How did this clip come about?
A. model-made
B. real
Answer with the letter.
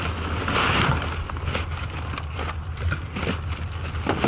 B